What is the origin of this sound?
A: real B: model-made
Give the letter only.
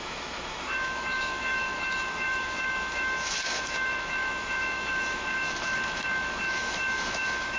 B